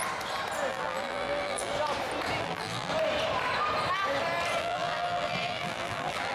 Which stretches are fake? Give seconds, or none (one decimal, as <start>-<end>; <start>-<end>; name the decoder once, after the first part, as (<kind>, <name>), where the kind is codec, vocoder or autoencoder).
0.7-1.7 (vocoder, BigVGAN v2); 2.4-2.9; 4.6-6.3